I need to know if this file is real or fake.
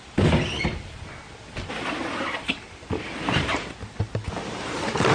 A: fake